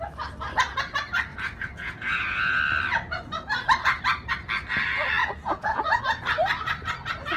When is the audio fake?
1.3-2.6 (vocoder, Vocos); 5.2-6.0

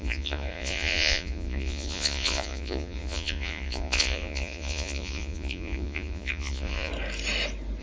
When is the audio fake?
0.0-6.9 (vocoder, Vocos)

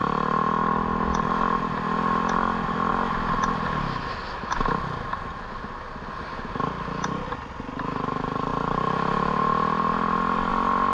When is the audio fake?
none

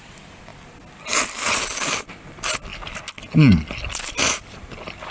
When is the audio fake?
none

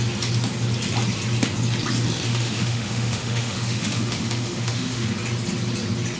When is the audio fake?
2.3-5.1 (autoencoder, DAC-VAE)

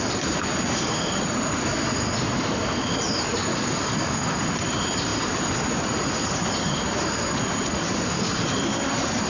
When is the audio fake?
3.5-4.4 (codec, DAC)

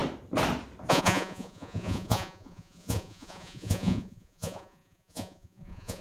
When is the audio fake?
0.9-6.0 (vocoder, Vocos)

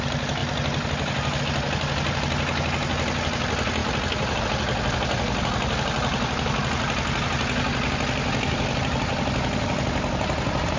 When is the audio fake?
none